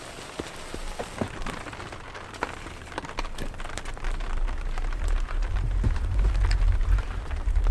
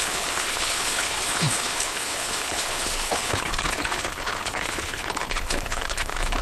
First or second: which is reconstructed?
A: second